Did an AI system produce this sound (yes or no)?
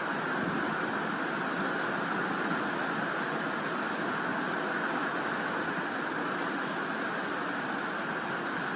no